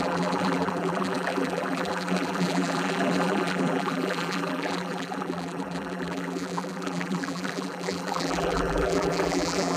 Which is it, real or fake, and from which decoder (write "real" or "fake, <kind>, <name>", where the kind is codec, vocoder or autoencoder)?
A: fake, vocoder, BigVGAN v2